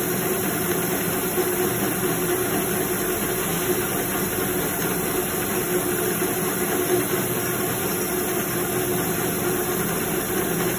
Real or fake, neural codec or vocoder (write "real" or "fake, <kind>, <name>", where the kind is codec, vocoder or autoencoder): real